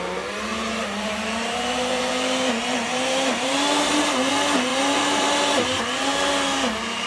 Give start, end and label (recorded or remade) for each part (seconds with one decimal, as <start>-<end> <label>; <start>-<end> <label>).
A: 0.0-0.5 recorded; 0.5-4.3 remade; 4.3-4.7 recorded; 4.7-5.8 remade; 5.8-7.1 recorded

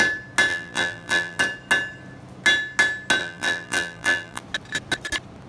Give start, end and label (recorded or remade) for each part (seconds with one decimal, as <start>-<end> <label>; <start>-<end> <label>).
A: 0.0-0.5 recorded; 0.5-1.4 remade; 1.4-3.2 recorded; 3.2-4.4 remade; 4.4-5.5 recorded

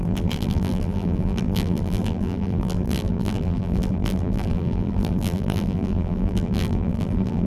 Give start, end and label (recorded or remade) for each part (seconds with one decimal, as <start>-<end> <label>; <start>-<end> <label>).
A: 0.0-7.5 remade

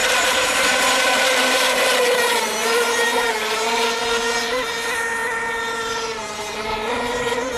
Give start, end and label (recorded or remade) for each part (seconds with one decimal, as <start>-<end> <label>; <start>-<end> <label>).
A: 0.0-1.8 remade; 1.8-7.6 recorded

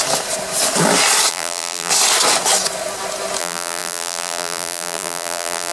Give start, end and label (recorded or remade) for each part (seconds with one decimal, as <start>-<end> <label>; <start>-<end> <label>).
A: 0.0-1.3 recorded; 1.3-1.9 remade; 1.9-3.4 recorded; 3.4-5.7 remade

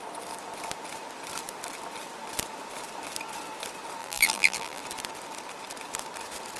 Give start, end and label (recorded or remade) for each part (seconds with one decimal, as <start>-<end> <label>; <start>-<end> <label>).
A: 0.0-4.0 recorded; 4.0-4.8 remade; 4.8-6.6 recorded

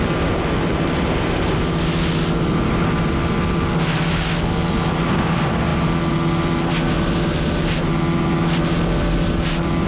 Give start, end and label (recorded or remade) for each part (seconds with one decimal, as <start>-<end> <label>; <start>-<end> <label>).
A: 0.0-9.9 recorded

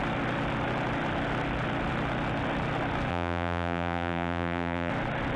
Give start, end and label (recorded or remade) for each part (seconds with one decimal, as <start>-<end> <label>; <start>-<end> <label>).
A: 0.0-3.1 recorded; 3.1-4.9 remade; 4.9-5.4 recorded